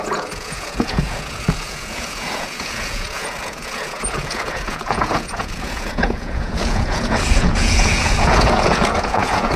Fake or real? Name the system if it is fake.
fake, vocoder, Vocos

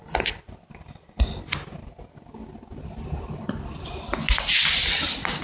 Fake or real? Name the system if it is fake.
real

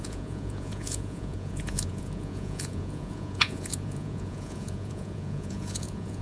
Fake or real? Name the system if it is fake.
fake, vocoder, Vocos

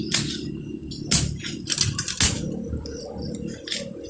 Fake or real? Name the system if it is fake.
real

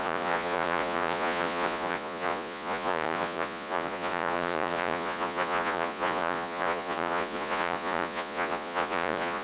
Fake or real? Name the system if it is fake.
fake, vocoder, Vocos